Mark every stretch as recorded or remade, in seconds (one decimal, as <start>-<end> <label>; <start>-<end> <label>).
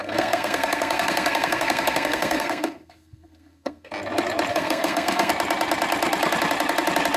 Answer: 0.0-3.9 remade; 3.9-4.5 recorded; 4.5-5.3 remade; 5.3-7.2 recorded